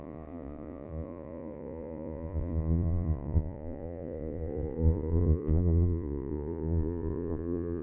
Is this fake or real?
fake